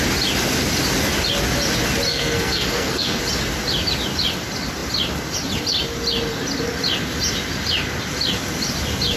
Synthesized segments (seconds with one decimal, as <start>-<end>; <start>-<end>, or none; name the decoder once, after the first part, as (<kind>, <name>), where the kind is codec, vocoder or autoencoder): 2.1-3.2 (codec, SNAC)

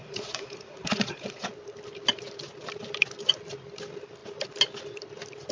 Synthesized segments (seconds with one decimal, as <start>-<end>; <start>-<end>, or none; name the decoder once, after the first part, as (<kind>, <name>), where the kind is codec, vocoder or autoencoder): 0.0-1.5 (vocoder, Vocos)

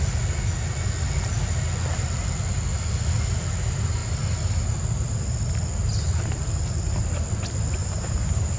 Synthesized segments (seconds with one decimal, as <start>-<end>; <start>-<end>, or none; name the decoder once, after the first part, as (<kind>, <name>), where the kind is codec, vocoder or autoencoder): 7.8-8.6 (vocoder, BigVGAN v2)

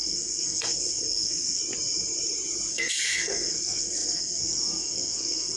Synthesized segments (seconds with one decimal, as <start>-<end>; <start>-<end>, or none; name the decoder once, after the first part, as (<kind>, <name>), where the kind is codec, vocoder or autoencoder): 0.0-1.6 (codec, SNAC); 2.7-5.6